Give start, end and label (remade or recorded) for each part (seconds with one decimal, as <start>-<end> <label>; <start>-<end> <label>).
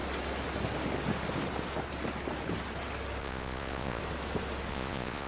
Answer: 0.0-3.2 recorded; 3.2-4.0 remade; 4.0-4.7 recorded; 4.7-5.3 remade